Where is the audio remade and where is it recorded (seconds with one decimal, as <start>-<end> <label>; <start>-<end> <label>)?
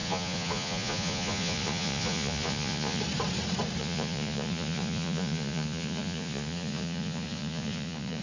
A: 0.0-3.0 remade; 3.0-3.8 recorded; 3.8-8.2 remade